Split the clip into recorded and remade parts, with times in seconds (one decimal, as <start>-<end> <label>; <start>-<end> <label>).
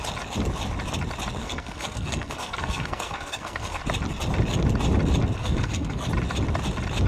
0.0-1.4 recorded; 1.4-3.8 remade; 3.8-5.4 recorded; 5.4-6.1 remade; 6.1-7.1 recorded